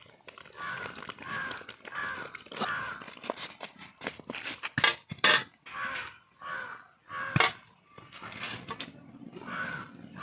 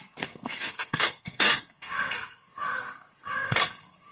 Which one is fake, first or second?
second